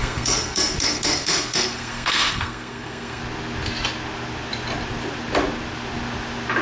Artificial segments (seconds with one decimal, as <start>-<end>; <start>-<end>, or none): 0.0-3.2